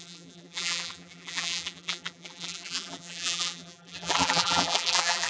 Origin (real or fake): fake